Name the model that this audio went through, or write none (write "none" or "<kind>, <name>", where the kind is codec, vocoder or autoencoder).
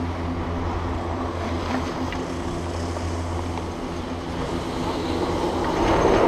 none